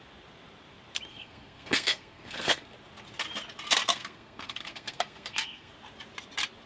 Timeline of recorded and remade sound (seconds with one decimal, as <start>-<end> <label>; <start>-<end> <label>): 0.0-1.1 recorded; 1.1-2.7 remade; 2.7-3.9 recorded; 3.9-5.7 remade; 5.7-6.7 recorded